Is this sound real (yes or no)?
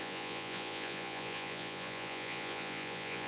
no